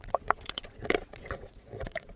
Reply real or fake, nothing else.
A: fake